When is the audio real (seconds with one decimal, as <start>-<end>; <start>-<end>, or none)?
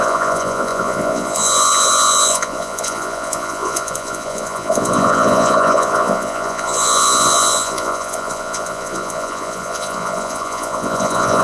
none